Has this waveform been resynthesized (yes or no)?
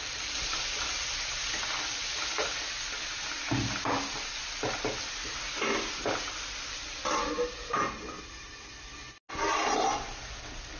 no